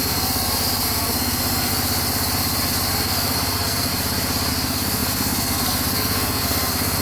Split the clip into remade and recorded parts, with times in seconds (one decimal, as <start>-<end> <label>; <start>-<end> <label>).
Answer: 0.0-1.7 remade; 1.7-2.9 recorded; 2.9-3.9 remade; 3.9-4.5 recorded; 4.5-7.0 remade